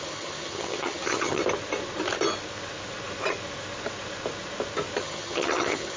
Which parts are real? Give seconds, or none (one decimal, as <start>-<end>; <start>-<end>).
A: 1.4-5.0